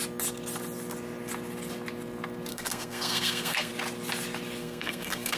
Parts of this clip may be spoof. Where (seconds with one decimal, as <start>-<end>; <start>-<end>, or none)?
2.5-3.7; 4.6-5.4

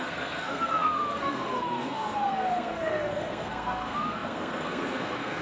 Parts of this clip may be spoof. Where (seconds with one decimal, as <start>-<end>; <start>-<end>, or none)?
0.0-5.4

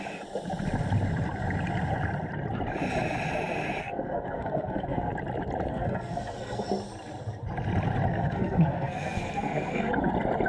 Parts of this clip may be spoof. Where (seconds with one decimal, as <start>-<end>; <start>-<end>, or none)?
3.8-5.1; 5.7-6.7; 8.1-10.1

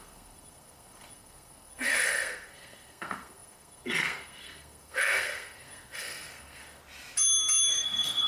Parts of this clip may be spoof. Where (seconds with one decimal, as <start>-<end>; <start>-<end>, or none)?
0.0-6.8; 7.7-8.3

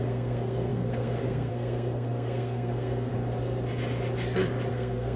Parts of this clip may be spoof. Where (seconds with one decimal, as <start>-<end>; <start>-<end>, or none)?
0.0-3.1; 4.7-5.2